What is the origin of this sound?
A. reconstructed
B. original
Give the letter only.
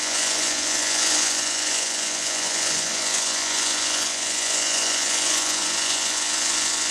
A